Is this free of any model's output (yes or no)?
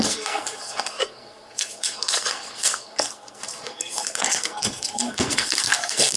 no